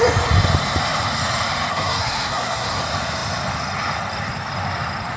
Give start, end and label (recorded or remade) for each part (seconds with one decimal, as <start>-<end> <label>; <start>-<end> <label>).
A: 0.0-1.7 recorded; 1.7-2.8 remade; 2.8-5.2 recorded